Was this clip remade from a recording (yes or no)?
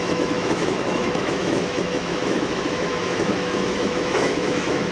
yes